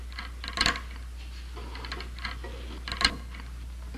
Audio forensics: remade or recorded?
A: recorded